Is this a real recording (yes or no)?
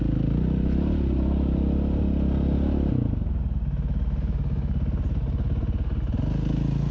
yes